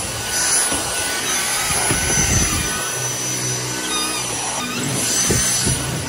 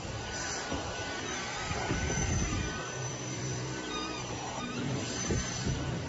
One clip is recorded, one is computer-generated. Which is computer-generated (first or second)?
second